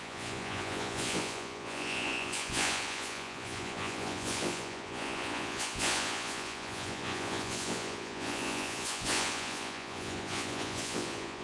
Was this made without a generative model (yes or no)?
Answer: no